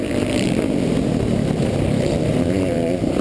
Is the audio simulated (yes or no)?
yes